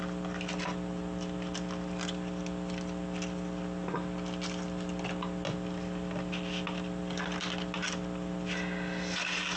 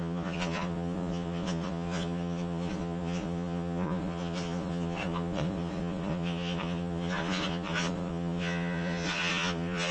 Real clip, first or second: first